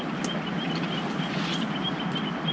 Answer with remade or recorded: recorded